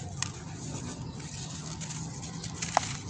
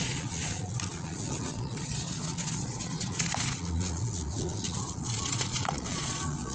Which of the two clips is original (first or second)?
first